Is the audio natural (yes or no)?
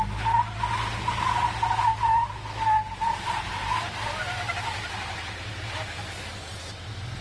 yes